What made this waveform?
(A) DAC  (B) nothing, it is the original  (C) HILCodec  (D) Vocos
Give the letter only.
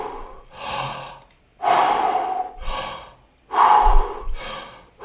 B